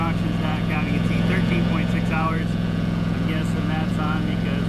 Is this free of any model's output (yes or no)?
no